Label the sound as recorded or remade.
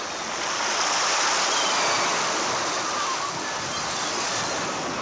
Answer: recorded